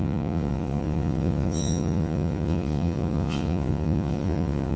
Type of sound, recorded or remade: remade